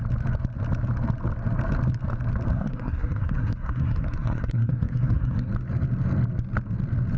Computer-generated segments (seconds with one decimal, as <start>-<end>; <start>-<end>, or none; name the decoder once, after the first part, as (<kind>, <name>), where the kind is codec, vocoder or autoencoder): 2.5-5.5 (codec, SNAC)